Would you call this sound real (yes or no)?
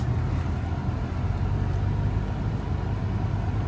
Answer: yes